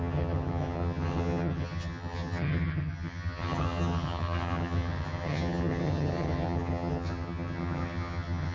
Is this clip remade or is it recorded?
remade